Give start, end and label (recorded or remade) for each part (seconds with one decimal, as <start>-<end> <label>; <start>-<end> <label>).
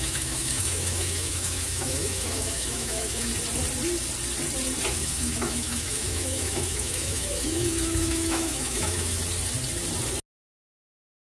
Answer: 0.0-3.3 remade; 3.3-4.9 recorded; 4.9-9.2 remade; 9.2-11.2 recorded